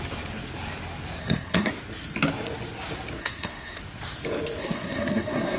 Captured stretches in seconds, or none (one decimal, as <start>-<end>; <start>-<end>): 0.0-1.2; 1.7-3.2; 3.8-4.6